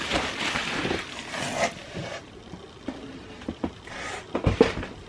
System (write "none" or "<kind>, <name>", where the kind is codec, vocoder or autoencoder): none